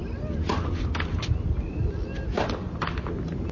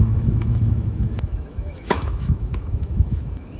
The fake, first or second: second